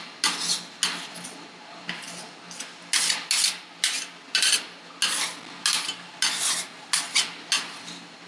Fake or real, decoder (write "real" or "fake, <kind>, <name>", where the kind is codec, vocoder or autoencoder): real